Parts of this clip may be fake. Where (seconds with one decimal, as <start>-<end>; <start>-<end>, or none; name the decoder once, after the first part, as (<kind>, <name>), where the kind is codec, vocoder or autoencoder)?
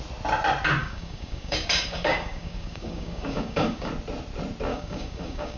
0.8-3.9 (codec, DAC); 4.7-5.6